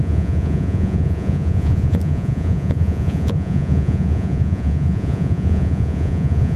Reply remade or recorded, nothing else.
remade